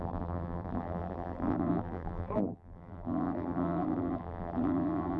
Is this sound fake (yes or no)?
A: yes